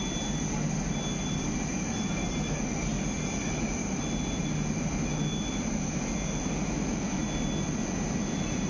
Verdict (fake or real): real